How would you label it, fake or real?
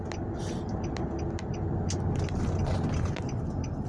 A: real